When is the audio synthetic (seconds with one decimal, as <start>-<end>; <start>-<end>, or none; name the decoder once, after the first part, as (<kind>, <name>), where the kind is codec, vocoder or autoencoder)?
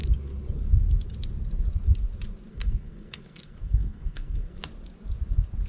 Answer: 2.5-4.6 (codec, SNAC)